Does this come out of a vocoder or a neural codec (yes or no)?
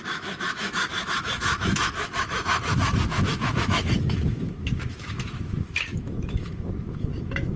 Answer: yes